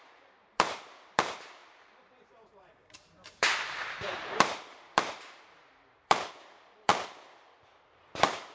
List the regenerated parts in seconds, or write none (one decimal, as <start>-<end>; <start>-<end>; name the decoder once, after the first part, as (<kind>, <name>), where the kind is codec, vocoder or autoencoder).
0.0-6.9 (vocoder, BigVGAN v2); 7.9-8.5